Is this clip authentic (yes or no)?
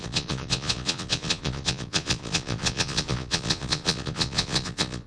no